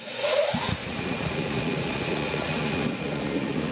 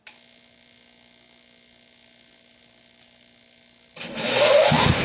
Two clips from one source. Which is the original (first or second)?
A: second